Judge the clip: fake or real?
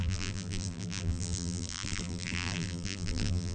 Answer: fake